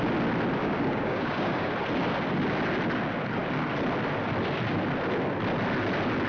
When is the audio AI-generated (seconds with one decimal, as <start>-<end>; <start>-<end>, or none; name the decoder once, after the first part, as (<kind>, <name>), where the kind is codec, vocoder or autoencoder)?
0.6-1.7 (codec, DAC)